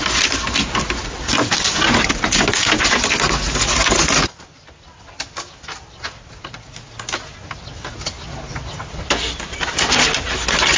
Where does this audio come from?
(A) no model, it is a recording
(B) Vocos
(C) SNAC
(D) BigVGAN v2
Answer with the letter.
A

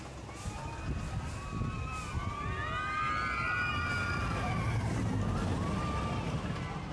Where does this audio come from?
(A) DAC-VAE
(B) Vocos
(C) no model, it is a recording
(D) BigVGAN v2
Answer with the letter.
C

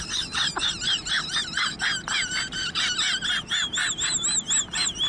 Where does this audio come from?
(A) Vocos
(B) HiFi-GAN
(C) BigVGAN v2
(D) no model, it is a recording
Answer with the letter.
D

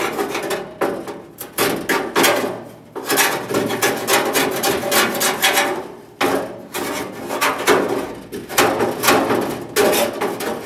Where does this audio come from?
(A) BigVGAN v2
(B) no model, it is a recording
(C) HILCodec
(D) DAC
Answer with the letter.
B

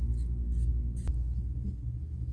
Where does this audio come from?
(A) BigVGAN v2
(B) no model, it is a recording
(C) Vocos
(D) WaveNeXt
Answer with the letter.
B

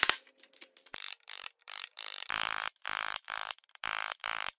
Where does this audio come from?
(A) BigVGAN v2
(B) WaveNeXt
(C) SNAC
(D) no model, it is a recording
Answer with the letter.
A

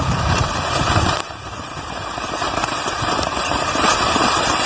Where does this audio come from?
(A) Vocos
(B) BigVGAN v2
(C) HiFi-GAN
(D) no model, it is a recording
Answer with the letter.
B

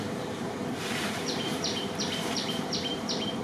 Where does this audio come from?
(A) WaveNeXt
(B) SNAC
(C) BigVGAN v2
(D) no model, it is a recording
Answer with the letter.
C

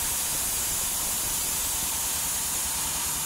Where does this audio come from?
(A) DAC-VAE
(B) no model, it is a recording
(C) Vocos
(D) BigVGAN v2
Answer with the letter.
B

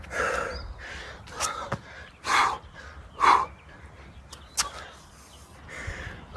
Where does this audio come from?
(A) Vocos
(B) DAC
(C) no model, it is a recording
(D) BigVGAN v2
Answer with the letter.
C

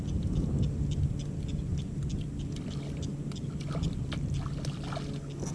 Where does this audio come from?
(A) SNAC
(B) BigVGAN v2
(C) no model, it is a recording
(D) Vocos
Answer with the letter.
C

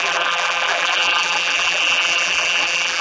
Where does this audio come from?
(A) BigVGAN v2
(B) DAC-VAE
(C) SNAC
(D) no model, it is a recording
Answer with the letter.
A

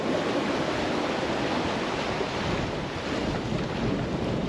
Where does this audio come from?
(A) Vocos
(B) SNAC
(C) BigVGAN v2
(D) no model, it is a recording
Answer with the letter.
D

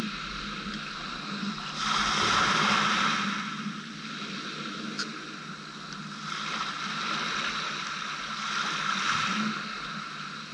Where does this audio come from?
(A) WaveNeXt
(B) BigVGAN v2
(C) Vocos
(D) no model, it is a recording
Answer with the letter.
D